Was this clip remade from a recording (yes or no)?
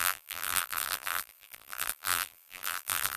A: yes